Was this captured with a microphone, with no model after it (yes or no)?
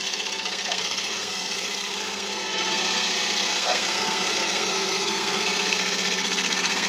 no